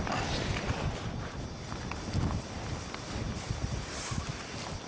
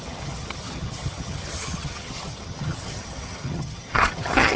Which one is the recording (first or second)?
first